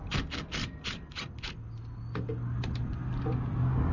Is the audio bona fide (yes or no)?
yes